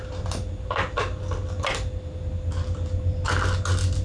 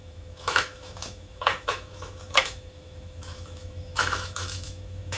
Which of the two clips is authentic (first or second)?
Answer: first